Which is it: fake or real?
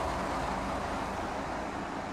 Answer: real